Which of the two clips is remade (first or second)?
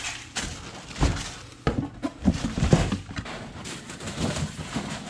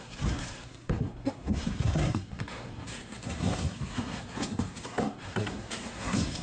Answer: second